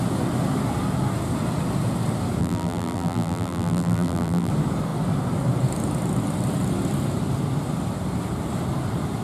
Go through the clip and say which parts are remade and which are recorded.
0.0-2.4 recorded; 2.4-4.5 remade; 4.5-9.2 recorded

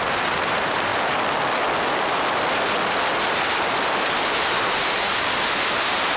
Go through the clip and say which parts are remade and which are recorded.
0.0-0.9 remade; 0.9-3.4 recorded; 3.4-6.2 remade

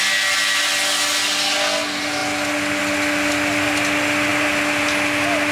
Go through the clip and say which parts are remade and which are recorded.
0.0-5.5 recorded

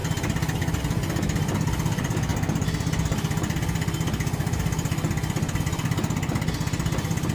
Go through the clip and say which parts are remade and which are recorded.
0.0-7.3 recorded

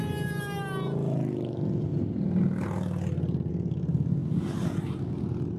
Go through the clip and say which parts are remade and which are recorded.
0.0-5.6 recorded

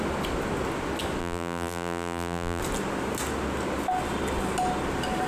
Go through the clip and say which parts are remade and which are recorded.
0.0-1.2 recorded; 1.2-2.6 remade; 2.6-5.3 recorded

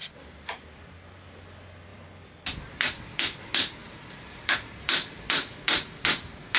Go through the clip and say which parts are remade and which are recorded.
0.0-0.8 remade; 0.8-1.9 recorded; 1.9-3.4 remade; 3.4-3.8 recorded; 3.8-6.1 remade; 6.1-6.6 recorded